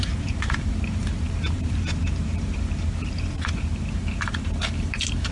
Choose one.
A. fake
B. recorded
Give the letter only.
A